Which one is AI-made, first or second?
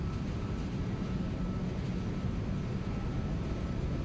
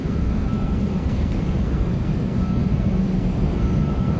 second